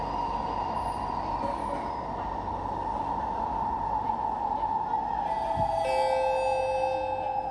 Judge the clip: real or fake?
real